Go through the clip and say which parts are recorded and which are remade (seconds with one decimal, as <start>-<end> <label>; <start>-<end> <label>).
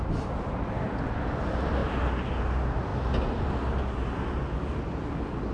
0.0-5.5 recorded